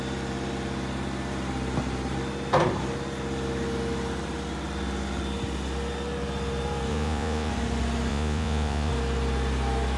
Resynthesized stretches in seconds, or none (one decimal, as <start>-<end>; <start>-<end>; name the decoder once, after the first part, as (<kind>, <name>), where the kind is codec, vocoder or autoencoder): 6.9-7.5 (vocoder, Vocos); 8.1-8.9